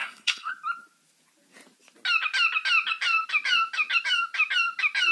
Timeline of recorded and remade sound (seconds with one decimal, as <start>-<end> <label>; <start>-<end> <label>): 0.0-0.5 remade; 0.5-5.1 recorded